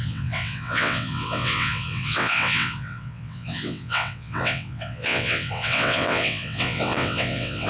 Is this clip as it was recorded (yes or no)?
no